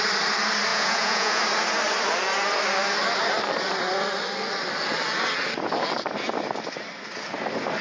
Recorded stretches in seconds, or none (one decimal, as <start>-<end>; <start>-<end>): 0.0-0.7; 1.4-7.8